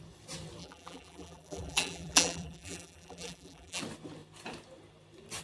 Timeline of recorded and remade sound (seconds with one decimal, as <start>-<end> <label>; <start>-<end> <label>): 0.0-0.6 recorded; 0.6-3.8 remade; 3.8-5.4 recorded

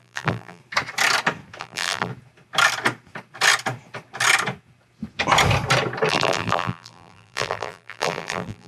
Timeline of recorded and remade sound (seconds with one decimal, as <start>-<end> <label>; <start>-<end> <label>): 0.0-0.6 remade; 0.6-1.6 recorded; 1.6-2.1 remade; 2.1-6.1 recorded; 6.1-8.7 remade

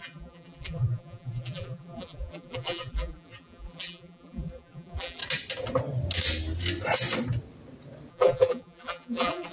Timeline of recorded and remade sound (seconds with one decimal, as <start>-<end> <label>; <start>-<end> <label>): 0.0-5.2 remade; 5.2-8.1 recorded; 8.1-9.5 remade

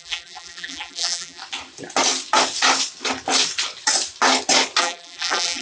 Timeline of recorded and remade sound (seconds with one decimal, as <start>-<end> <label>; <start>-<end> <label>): 0.0-1.4 remade; 1.4-4.8 recorded; 4.8-5.6 remade